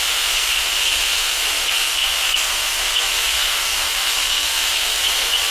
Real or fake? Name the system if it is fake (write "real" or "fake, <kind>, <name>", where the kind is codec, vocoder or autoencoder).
fake, codec, SNAC